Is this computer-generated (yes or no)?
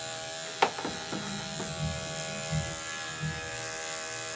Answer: no